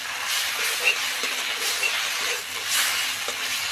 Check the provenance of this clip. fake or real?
real